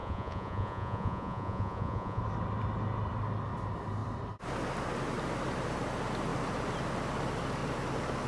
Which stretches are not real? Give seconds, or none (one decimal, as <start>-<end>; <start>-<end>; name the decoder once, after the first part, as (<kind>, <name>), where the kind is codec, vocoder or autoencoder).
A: 0.0-2.2 (vocoder, Vocos)